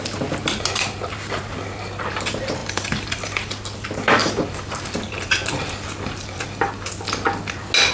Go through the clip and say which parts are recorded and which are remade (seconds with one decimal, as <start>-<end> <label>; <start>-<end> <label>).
0.0-2.6 recorded; 2.6-3.5 remade; 3.5-4.2 recorded; 4.2-6.9 remade; 6.9-7.9 recorded